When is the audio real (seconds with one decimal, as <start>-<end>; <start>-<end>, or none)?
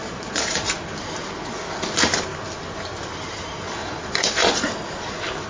0.6-3.8; 4.5-5.5